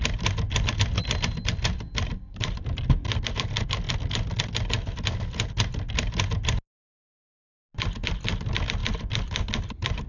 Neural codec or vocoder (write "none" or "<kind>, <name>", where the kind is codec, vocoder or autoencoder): none